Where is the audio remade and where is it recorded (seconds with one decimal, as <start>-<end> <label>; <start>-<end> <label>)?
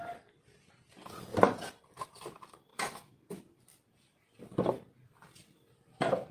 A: 0.0-2.7 recorded; 2.7-3.4 remade; 3.4-6.3 recorded